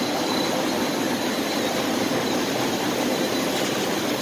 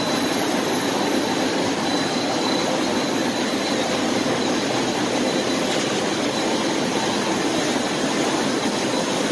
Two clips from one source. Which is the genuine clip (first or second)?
second